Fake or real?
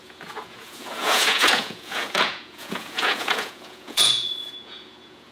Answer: fake